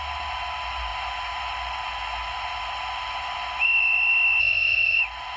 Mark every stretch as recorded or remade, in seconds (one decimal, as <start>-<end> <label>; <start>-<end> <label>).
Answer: 0.0-4.4 recorded; 4.4-5.0 remade; 5.0-5.4 recorded